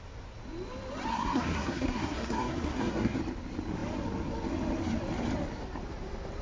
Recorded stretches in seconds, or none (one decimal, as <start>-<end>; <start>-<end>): 0.0-1.1; 3.2-6.4